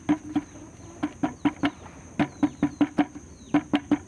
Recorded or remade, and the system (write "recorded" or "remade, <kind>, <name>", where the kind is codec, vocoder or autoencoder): recorded